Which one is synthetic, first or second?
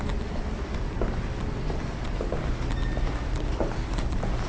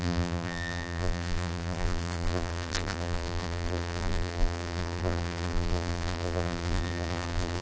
second